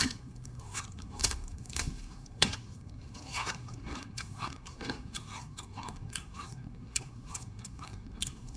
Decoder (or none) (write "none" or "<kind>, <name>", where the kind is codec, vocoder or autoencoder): codec, SNAC